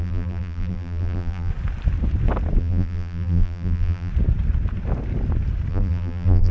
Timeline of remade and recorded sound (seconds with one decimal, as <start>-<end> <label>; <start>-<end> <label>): 0.0-1.5 remade; 1.5-2.6 recorded; 2.6-4.1 remade; 4.1-5.7 recorded; 5.7-6.5 remade